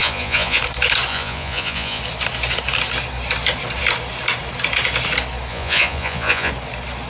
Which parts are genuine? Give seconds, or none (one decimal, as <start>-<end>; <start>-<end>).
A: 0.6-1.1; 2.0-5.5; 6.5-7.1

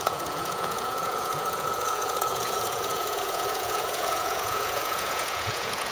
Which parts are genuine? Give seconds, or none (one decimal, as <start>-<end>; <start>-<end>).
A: none

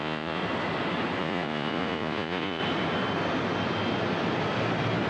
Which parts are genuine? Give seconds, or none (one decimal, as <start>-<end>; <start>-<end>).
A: 0.4-1.2; 2.6-5.1

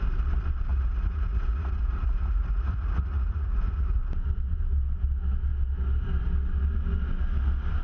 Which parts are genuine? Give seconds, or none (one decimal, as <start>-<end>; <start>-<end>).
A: 0.0-0.7; 4.0-7.8

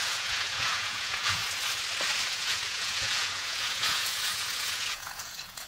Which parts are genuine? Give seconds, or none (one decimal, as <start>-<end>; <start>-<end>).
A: 1.4-2.3